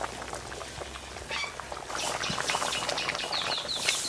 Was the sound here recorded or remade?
recorded